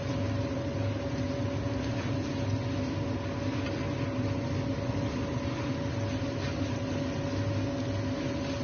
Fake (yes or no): no